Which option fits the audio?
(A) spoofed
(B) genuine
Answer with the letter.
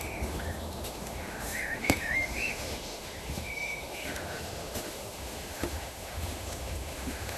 A